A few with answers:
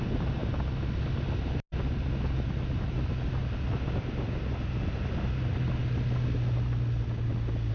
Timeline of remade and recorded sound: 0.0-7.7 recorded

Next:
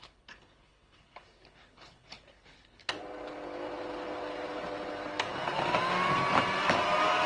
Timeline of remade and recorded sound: 0.0-2.8 remade; 2.8-7.3 recorded

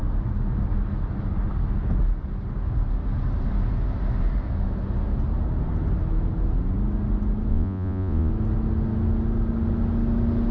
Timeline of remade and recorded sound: 0.0-7.5 recorded; 7.5-8.3 remade; 8.3-10.5 recorded

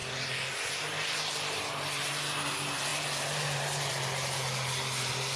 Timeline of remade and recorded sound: 0.0-5.4 recorded

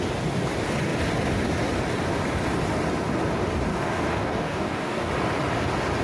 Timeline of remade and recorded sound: 0.0-3.7 recorded; 3.7-5.1 remade; 5.1-6.0 recorded